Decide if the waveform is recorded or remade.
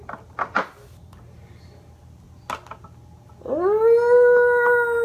recorded